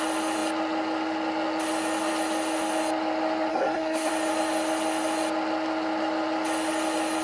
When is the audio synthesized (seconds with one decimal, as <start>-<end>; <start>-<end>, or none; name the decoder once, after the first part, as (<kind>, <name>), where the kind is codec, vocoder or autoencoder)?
3.5-4.1 (codec, SNAC)